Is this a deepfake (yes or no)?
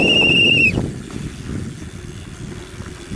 no